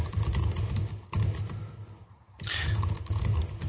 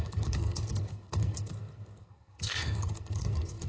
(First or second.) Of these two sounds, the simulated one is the second